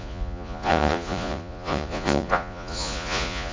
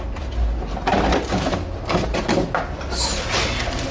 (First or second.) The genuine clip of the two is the second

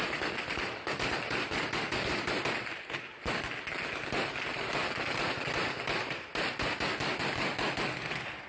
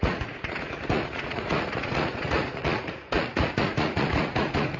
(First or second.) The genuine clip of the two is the first